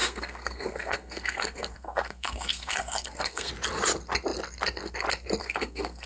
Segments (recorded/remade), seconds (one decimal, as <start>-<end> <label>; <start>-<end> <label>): 0.0-3.5 remade; 3.5-5.4 recorded; 5.4-6.1 remade